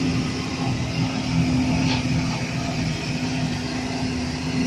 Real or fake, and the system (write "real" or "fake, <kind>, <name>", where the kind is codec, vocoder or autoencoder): real